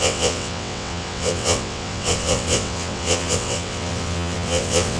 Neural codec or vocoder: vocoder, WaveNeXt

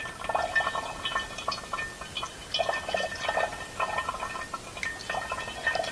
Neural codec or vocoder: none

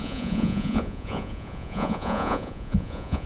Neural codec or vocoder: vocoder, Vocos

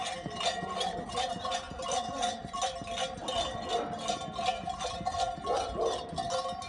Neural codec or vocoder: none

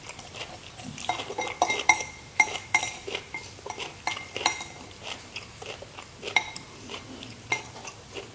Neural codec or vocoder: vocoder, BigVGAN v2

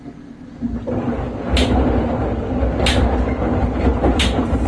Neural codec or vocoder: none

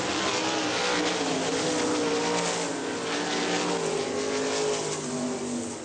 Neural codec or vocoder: none